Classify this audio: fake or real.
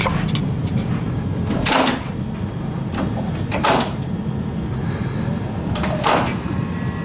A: real